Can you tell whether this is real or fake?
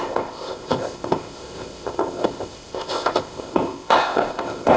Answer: fake